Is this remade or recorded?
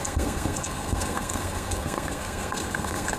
remade